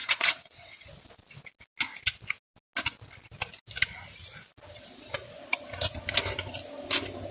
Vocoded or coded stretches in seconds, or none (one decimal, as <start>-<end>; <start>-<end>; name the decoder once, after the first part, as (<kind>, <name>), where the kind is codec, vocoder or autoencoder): 0.0-0.8 (vocoder, WaveNeXt)